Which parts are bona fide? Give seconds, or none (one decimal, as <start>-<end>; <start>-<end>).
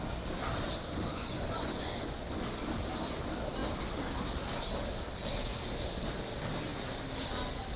0.0-1.1; 2.2-7.8